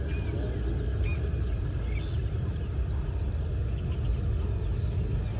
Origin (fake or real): real